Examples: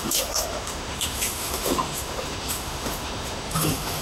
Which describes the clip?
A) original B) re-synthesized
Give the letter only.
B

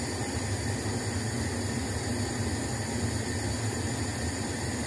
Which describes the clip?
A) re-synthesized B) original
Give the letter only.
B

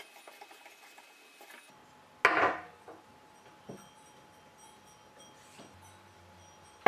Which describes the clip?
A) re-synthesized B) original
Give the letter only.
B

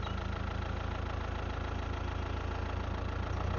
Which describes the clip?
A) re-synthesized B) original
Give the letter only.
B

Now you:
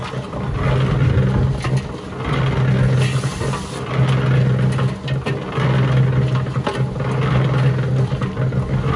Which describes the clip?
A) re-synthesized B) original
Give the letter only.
B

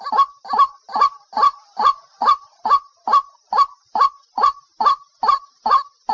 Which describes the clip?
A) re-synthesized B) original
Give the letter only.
B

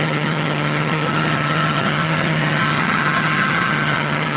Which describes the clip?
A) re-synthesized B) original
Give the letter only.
A